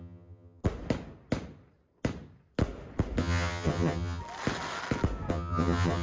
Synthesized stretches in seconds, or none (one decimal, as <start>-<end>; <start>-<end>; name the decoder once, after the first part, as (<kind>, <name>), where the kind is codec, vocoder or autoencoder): 0.0-0.6 (vocoder, HiFi-GAN); 3.2-4.2; 5.3-6.0